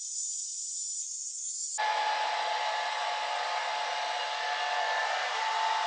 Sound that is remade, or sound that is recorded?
recorded